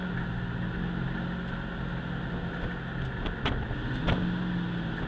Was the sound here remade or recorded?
recorded